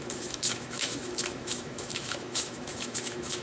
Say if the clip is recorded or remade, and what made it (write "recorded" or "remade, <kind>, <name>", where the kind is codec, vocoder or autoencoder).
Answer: remade, autoencoder, DAC-VAE